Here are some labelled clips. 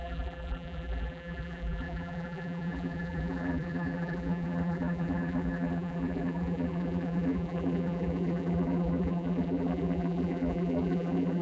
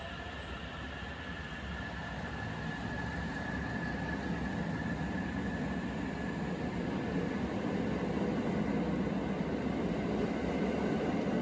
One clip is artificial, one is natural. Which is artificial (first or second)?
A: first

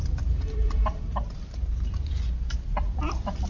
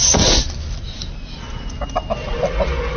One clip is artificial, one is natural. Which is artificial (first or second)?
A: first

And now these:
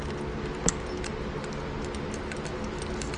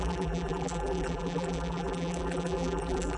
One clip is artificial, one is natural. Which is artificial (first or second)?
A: second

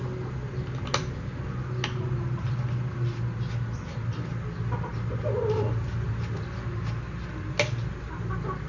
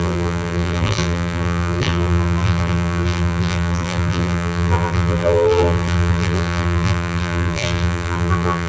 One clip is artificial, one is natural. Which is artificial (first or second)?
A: second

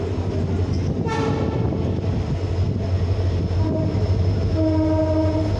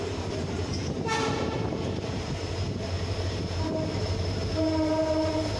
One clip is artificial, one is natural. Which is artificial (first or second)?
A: second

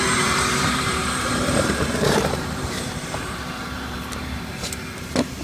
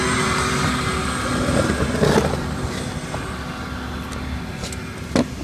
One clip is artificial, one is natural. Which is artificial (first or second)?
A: first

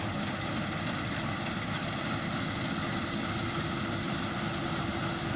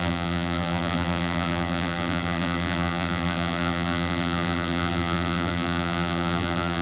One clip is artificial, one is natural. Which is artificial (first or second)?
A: second